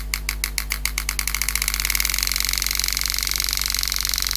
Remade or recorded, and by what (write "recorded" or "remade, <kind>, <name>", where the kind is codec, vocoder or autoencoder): recorded